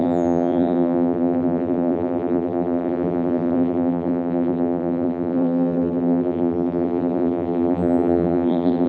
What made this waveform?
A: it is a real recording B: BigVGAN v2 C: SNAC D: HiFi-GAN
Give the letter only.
B